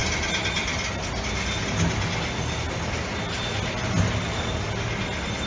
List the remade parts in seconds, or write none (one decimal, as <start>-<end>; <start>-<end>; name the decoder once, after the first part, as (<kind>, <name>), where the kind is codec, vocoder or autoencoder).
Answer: none